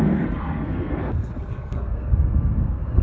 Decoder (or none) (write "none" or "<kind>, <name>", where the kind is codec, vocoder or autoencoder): codec, SNAC